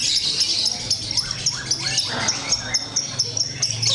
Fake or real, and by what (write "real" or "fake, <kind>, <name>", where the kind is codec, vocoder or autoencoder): real